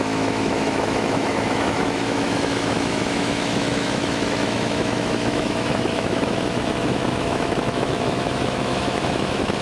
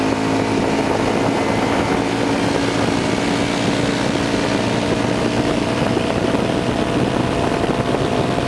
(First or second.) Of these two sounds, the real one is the second